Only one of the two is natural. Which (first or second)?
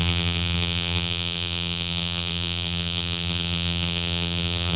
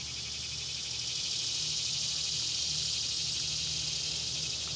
second